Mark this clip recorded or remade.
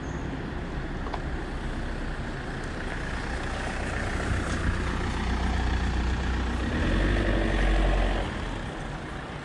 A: recorded